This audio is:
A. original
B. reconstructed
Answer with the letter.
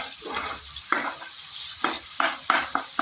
B